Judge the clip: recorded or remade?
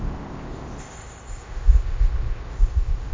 remade